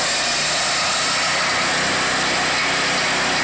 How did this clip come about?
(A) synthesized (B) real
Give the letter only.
B